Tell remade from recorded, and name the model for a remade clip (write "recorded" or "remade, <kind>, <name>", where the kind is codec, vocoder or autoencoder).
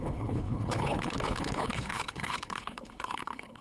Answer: remade, codec, HILCodec